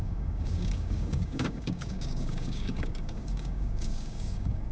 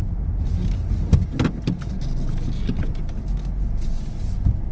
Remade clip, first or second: first